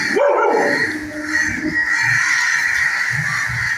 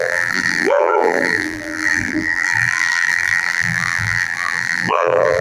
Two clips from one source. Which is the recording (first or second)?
first